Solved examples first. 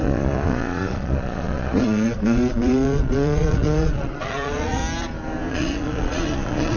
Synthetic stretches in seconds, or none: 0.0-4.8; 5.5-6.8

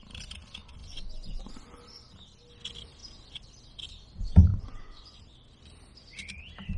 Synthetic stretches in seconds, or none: 0.8-1.5; 4.5-5.2

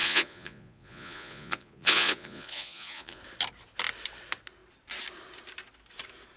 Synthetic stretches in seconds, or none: 0.0-3.2

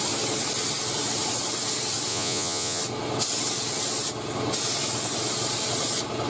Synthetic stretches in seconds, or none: 2.1-2.8

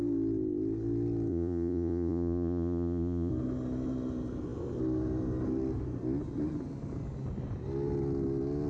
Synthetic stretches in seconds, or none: 1.3-3.3

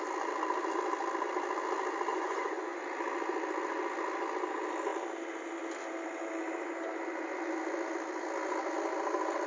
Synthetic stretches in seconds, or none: 2.1-2.8

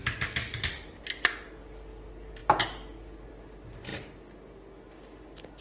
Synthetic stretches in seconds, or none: none